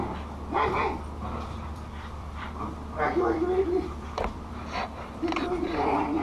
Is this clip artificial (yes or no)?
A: yes